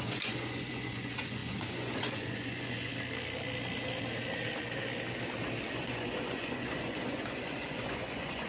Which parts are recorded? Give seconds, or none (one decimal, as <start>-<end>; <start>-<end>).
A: 2.9-5.7